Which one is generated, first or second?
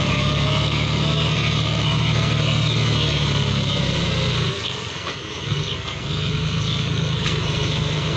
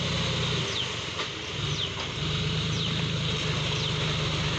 first